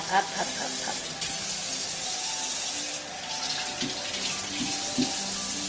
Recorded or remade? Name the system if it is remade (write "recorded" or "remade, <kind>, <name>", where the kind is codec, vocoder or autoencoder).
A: recorded